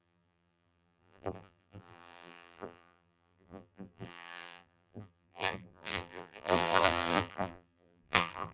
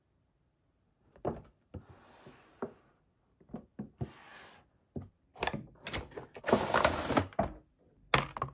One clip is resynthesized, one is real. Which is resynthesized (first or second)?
first